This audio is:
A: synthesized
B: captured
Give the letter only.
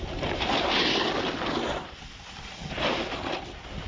B